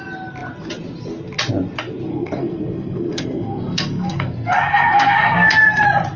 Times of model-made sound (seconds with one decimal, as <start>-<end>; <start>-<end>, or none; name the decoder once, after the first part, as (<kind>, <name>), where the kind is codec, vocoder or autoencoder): 2.1-5.8 (codec, SNAC)